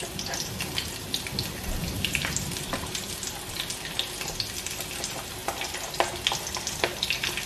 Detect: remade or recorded recorded